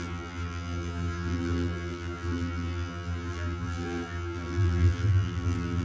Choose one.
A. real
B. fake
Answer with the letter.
B